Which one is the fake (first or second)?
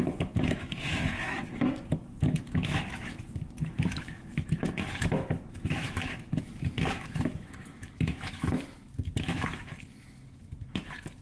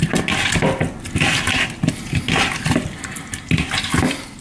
first